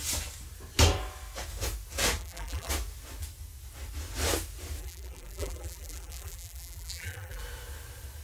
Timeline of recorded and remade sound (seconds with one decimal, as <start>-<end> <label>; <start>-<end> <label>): 0.0-2.2 recorded; 2.2-2.7 remade; 2.7-4.8 recorded; 4.8-7.4 remade; 7.4-8.2 recorded